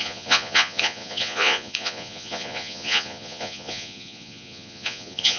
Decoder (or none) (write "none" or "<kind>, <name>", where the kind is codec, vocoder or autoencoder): vocoder, Vocos